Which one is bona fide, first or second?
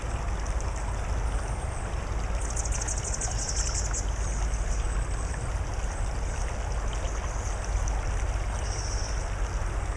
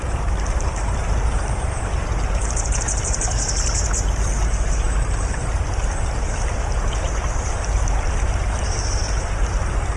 first